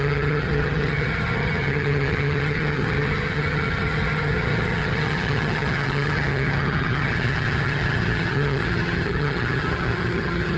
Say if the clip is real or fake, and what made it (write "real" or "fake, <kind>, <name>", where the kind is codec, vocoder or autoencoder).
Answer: fake, vocoder, HiFi-GAN